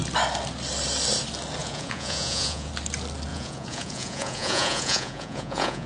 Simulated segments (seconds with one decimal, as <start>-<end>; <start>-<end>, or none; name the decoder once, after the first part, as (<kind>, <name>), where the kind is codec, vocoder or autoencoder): 1.6-2.7 (vocoder, Vocos); 3.3-5.9